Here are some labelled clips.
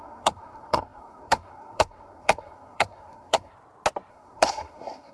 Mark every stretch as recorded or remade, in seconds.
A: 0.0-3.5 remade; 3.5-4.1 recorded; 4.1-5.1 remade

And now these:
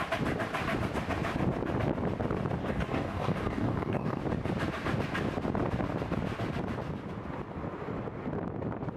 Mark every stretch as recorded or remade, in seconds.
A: 0.0-2.6 recorded; 2.6-4.2 remade; 4.2-9.0 recorded

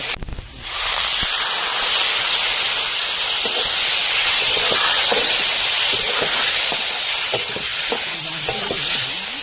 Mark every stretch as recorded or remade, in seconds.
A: 0.0-4.0 recorded; 4.0-5.3 remade; 5.3-9.4 recorded

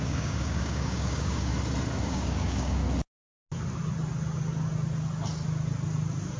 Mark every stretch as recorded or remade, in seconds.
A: 0.0-1.5 remade; 1.5-2.1 recorded; 2.1-2.8 remade; 2.8-6.4 recorded

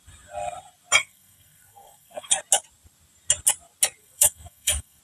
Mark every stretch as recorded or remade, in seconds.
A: 0.0-1.0 recorded; 1.0-2.4 remade; 2.4-4.0 recorded; 4.0-5.0 remade

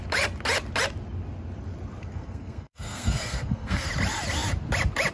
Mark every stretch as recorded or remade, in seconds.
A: 0.0-2.0 recorded; 2.0-3.9 remade; 3.9-5.1 recorded

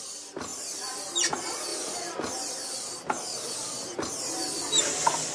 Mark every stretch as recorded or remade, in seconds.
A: 0.0-0.5 recorded; 0.5-1.0 remade; 1.0-5.3 recorded